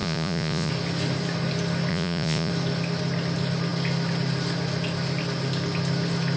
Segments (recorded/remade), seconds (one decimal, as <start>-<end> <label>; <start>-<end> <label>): 0.0-0.7 remade; 0.7-1.9 recorded; 1.9-2.5 remade; 2.5-6.4 recorded